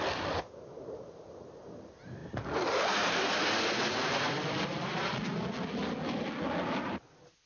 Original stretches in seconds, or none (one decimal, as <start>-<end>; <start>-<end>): 0.0-7.5